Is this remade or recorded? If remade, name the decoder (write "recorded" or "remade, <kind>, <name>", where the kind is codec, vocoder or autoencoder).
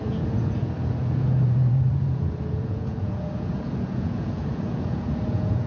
remade, vocoder, Vocos